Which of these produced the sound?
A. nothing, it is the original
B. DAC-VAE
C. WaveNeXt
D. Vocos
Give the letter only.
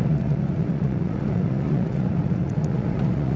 D